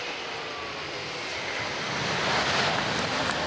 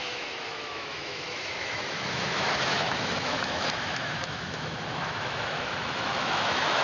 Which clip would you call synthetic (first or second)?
second